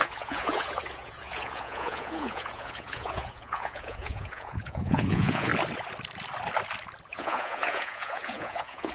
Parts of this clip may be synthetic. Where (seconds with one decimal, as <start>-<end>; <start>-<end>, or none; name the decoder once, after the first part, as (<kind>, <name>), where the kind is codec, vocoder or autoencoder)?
0.0-5.5 (vocoder, Vocos); 7.1-8.9